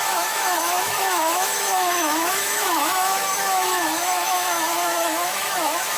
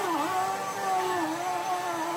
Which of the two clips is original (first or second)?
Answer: second